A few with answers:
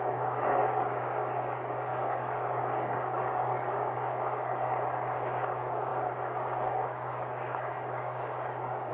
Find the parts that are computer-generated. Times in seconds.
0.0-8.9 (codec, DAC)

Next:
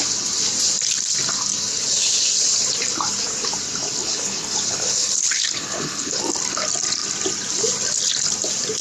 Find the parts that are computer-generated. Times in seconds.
1.7-2.3 (codec, HILCodec); 4.0-6.2

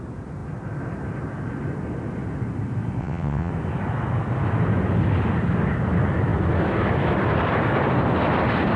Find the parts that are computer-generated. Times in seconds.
3.0-3.5 (vocoder, WaveNeXt)

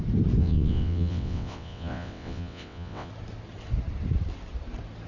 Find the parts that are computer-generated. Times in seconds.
0.4-3.1 (vocoder, WaveNeXt)

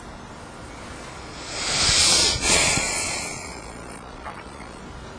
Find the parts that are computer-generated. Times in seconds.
2.0-4.8 (vocoder, Vocos)

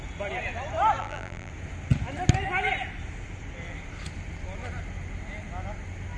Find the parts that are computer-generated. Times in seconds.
1.0-1.5 (vocoder, BigVGAN v2)